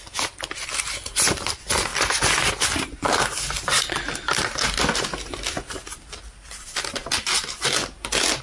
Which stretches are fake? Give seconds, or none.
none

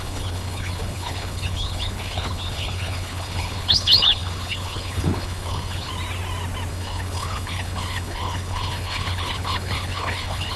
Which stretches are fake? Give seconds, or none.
0.0-5.9; 6.7-10.6